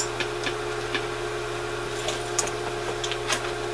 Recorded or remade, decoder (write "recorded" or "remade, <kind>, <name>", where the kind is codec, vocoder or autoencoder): recorded